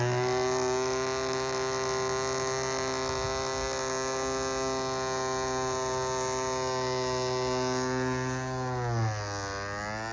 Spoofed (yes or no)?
no